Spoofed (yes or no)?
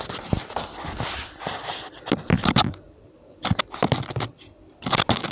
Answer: no